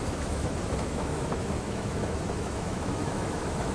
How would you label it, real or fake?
fake